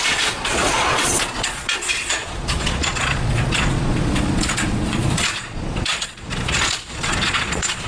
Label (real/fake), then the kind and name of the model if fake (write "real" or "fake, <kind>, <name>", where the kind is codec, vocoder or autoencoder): fake, vocoder, Vocos